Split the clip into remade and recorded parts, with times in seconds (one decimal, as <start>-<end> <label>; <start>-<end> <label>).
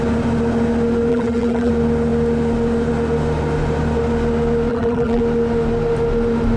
0.0-1.1 recorded; 1.1-1.7 remade; 1.7-4.7 recorded; 4.7-5.2 remade; 5.2-6.6 recorded